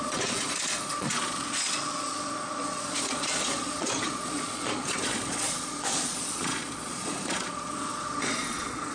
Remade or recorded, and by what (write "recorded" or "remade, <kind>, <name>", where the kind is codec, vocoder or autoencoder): remade, vocoder, Vocos